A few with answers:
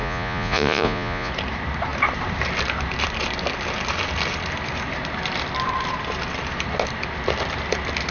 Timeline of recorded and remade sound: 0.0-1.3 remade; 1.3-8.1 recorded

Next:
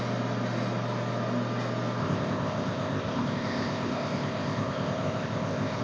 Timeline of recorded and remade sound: 0.0-2.0 recorded; 2.0-5.8 remade

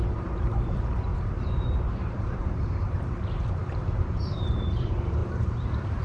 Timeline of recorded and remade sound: 0.0-6.0 remade